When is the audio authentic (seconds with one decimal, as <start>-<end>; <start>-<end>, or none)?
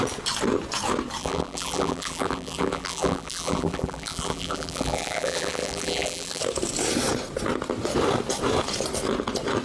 0.0-1.2; 6.4-9.6